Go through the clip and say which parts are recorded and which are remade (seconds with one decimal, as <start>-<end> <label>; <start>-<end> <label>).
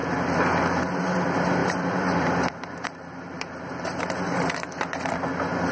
0.0-1.6 recorded; 1.6-4.8 remade; 4.8-5.7 recorded